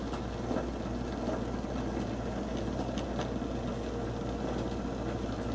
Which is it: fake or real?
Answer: real